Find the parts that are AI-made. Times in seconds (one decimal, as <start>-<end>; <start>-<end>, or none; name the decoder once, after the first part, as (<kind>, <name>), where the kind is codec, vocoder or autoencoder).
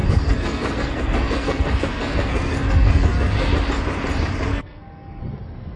0.0-3.5 (codec, SNAC); 4.5-5.2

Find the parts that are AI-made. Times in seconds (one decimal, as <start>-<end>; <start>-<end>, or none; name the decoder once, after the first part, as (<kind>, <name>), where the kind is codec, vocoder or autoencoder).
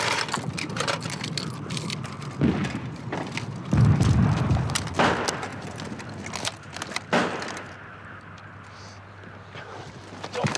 none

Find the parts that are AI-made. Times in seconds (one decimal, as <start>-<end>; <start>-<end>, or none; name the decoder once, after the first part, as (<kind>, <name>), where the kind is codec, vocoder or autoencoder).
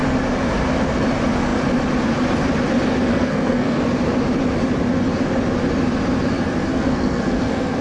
3.1-3.8 (codec, SNAC); 6.7-7.8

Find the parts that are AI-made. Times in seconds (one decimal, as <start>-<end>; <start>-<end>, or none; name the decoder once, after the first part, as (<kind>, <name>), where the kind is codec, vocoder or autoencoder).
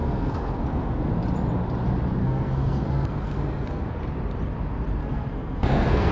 0.0-1.1 (codec, SNAC); 2.2-4.0; 5.0-6.1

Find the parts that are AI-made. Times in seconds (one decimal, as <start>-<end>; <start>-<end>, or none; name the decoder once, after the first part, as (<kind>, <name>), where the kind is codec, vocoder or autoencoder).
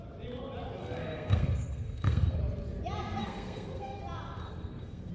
0.8-2.4 (codec, SNAC); 3.2-4.0; 4.4-5.1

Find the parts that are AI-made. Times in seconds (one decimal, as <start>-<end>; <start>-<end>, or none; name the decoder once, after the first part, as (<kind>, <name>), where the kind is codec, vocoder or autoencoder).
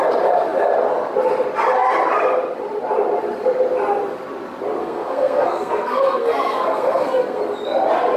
4.8-7.4 (codec, SNAC)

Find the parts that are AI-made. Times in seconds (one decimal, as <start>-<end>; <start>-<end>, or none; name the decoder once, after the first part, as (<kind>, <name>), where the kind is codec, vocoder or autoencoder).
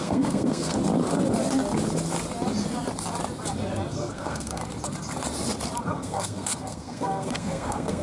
0.0-0.8 (codec, SNAC); 3.9-4.6; 5.8-8.0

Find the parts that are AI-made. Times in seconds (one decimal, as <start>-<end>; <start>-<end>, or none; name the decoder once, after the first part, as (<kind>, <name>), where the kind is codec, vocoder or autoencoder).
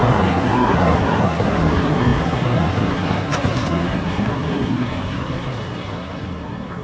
0.0-6.8 (codec, SNAC)